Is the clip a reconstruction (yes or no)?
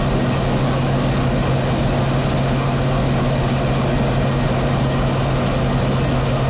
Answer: no